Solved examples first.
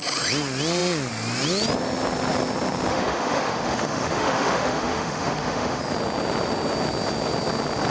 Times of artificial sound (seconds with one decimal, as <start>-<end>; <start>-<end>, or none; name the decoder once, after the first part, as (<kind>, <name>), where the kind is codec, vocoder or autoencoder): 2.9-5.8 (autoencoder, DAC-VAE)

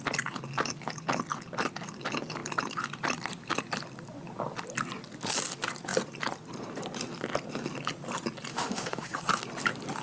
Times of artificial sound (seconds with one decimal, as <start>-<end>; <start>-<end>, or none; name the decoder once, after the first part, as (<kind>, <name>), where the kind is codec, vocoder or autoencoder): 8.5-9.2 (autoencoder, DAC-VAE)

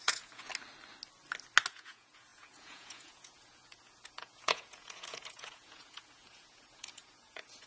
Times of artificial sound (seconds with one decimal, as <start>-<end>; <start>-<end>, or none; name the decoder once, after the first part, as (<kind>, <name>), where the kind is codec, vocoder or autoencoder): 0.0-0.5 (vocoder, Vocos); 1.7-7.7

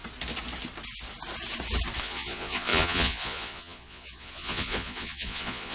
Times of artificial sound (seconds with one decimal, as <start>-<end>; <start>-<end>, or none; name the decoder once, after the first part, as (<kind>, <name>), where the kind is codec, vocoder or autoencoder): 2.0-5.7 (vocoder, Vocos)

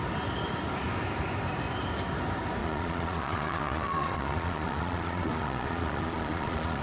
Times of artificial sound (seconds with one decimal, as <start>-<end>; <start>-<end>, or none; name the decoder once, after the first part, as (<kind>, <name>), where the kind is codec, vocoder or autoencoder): 2.6-6.8 (vocoder, Vocos)

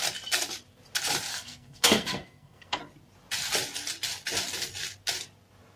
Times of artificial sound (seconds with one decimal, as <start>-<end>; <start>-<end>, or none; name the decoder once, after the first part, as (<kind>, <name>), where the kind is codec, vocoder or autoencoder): 1.3-2.8 (codec, SNAC)

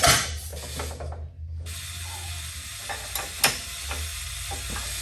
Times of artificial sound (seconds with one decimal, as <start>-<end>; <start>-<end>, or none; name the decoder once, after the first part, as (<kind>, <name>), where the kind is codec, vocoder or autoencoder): none